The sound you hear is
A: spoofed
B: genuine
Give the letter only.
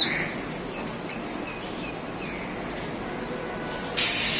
B